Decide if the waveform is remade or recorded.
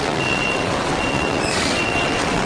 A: remade